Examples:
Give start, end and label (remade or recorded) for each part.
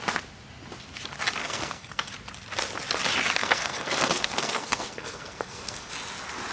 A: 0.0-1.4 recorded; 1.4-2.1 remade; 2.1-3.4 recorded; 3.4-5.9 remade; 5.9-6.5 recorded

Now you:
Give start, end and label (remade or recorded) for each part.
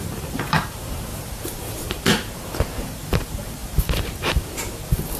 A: 0.0-5.2 remade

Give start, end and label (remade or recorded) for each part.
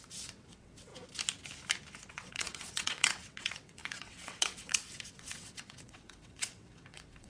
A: 0.0-0.9 remade; 0.9-2.1 recorded; 2.1-7.3 remade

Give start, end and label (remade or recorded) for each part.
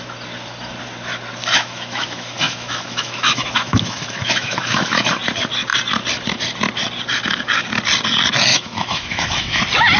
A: 0.0-1.4 recorded; 1.4-5.2 remade; 5.2-8.5 recorded; 8.5-9.6 remade; 9.6-10.0 recorded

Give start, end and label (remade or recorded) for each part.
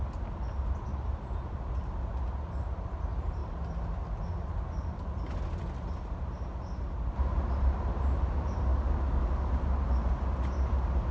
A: 0.0-8.7 recorded; 8.7-9.5 remade; 9.5-11.1 recorded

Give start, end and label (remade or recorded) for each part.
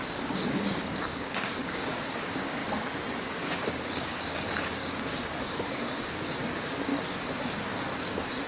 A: 0.0-2.6 remade; 2.6-3.2 recorded; 3.2-6.9 remade; 6.9-7.6 recorded; 7.6-8.5 remade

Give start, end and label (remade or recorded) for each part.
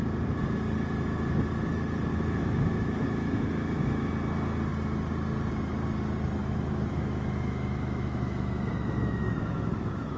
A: 0.0-2.1 recorded; 2.1-4.1 remade; 4.1-6.4 recorded; 6.4-10.2 remade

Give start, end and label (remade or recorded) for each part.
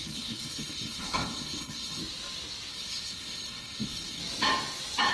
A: 0.0-2.0 remade; 2.0-2.7 recorded; 2.7-4.2 remade; 4.2-5.1 recorded